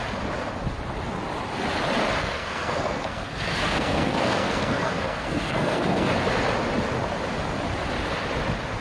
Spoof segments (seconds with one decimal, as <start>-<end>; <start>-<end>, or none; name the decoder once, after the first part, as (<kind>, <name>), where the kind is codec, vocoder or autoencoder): 2.2-6.1 (codec, SNAC)